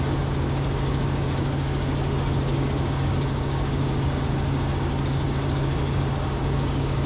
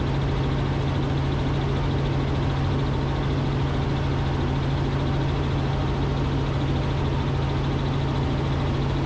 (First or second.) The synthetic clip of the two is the first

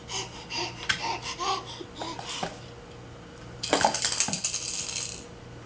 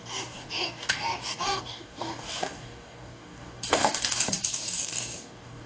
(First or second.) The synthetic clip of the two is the second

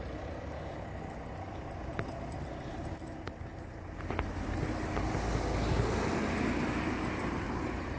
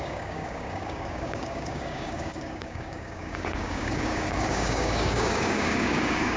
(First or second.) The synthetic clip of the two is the second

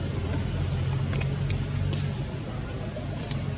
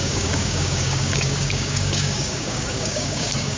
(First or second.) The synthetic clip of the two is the second